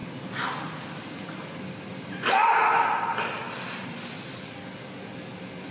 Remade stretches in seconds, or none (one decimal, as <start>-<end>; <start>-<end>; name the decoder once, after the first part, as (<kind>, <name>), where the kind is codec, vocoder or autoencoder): none